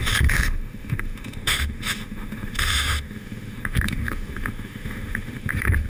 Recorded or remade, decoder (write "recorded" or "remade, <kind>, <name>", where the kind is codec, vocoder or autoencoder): remade, autoencoder, DAC-VAE